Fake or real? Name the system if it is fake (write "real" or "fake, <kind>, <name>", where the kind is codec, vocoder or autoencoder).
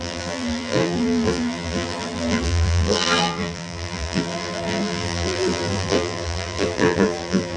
fake, vocoder, BigVGAN v2